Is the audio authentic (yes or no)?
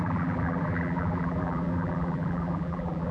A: no